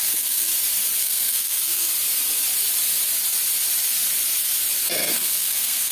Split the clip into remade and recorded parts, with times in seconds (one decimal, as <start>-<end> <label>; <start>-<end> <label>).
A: 0.0-0.5 remade; 0.5-1.0 recorded; 1.0-1.9 remade; 1.9-4.8 recorded; 4.8-5.9 remade